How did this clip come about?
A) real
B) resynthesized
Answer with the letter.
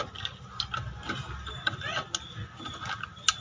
A